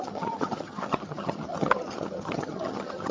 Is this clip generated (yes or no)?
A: yes